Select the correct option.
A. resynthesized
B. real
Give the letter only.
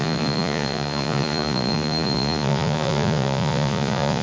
A